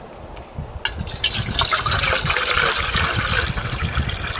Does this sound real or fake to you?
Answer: real